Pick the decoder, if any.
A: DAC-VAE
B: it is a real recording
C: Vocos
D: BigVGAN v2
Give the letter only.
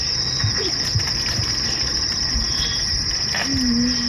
B